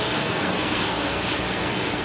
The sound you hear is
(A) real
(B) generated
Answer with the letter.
B